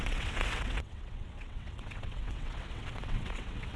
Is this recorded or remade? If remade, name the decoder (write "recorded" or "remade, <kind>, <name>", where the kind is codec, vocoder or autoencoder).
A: remade, vocoder, WaveNeXt